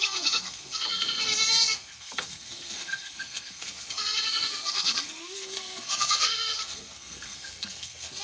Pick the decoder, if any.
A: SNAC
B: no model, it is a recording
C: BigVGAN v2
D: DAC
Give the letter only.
A